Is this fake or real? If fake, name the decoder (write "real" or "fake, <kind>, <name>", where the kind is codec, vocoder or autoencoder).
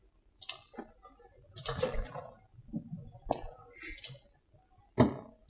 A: real